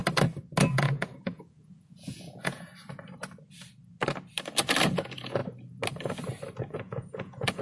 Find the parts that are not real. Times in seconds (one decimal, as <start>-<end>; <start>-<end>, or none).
0.7-2.7; 4.9-5.4; 6.6-7.6